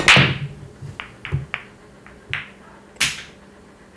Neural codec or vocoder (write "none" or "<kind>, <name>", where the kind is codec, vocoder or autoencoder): none